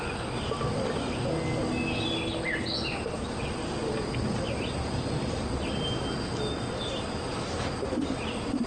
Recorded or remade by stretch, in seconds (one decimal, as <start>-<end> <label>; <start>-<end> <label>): 0.0-3.8 recorded; 3.8-5.4 remade; 5.4-8.7 recorded